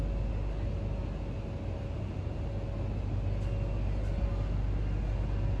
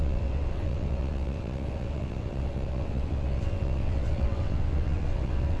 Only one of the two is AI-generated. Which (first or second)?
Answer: second